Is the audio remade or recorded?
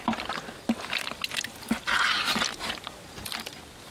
recorded